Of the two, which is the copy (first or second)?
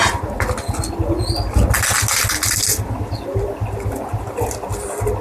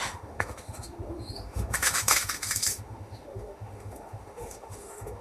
second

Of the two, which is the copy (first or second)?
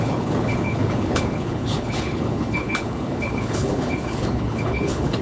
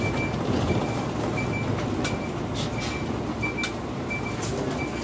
first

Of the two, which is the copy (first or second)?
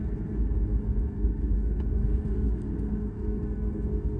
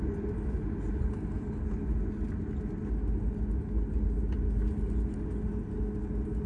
first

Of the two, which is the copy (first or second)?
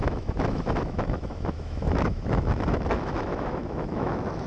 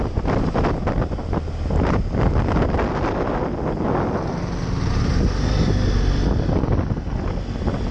first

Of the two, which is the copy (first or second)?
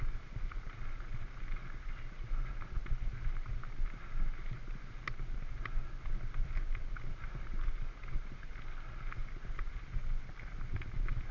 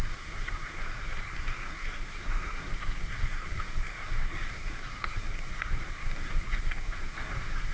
second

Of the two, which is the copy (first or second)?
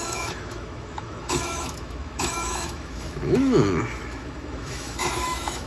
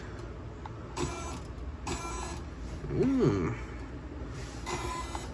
first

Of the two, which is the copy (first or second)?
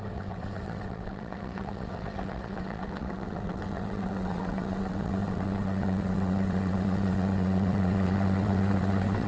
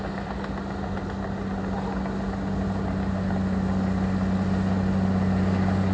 first